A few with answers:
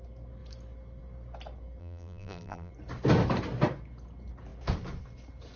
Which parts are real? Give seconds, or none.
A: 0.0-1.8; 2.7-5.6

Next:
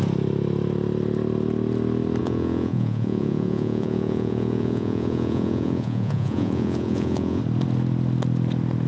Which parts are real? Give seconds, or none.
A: 0.0-2.2; 7.4-8.9

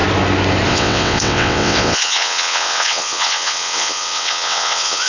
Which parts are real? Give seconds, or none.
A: 0.0-0.7